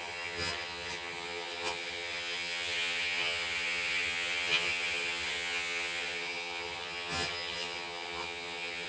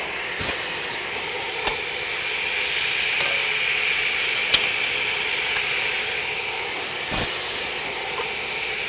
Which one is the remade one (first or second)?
first